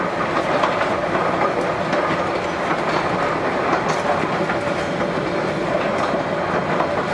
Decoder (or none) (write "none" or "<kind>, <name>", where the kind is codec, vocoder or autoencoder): none